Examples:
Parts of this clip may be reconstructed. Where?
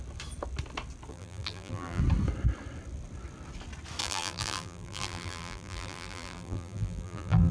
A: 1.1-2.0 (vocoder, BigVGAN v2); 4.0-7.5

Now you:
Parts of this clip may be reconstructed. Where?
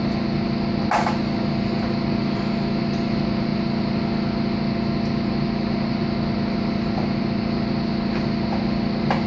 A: none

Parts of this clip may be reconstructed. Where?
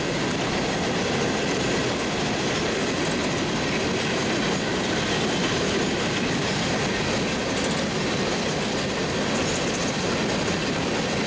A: none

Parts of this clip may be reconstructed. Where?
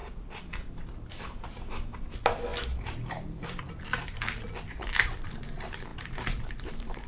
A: 0.0-2.5 (vocoder, BigVGAN v2); 3.6-4.2; 5.1-7.1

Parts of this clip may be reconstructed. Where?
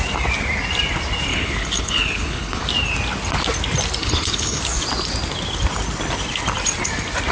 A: 1.3-2.6 (codec, HILCodec); 4.0-4.6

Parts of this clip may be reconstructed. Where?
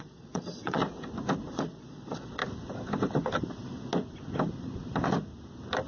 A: 0.0-0.8 (vocoder, Vocos); 1.5-2.4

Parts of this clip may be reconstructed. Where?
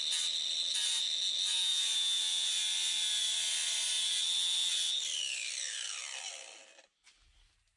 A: none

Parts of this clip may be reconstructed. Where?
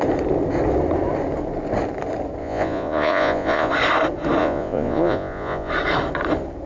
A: 2.4-3.7 (vocoder, Vocos); 4.4-5.7